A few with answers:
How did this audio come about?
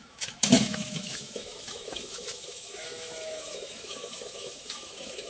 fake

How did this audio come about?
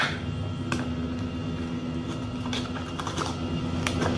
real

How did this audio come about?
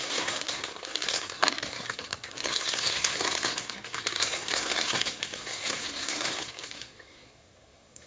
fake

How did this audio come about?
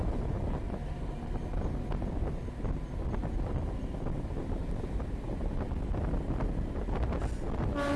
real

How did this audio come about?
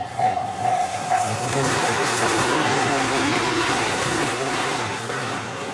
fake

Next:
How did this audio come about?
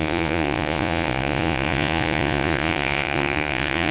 fake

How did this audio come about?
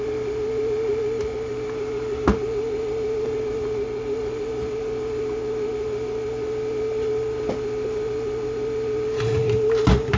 real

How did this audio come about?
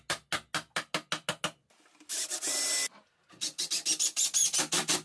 real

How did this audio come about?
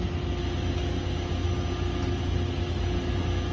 real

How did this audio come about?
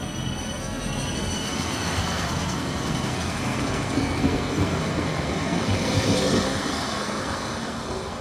fake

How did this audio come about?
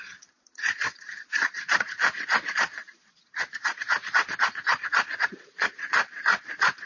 fake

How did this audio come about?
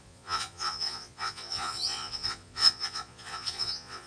fake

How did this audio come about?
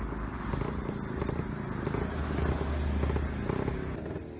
real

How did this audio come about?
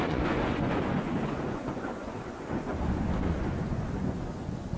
fake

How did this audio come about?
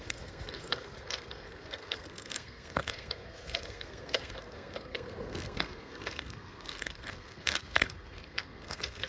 fake